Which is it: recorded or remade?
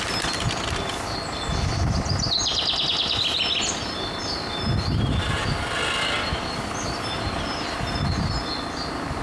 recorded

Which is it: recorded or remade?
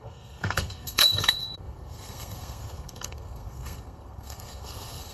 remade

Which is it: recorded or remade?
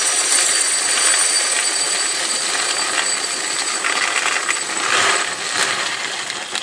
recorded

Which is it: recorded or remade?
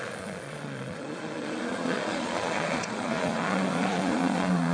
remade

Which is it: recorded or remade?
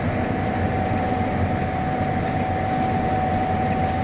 recorded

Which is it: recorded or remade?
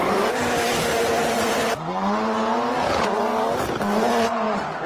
recorded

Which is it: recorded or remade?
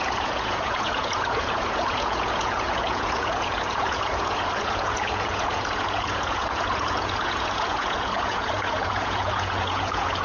remade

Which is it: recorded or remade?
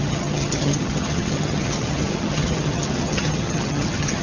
remade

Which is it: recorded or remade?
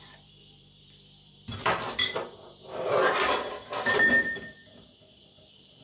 remade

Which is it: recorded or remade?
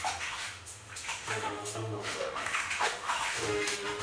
remade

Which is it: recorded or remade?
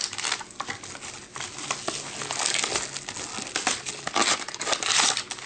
recorded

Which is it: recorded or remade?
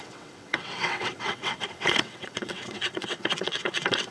remade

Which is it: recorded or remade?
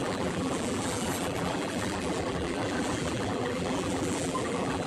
remade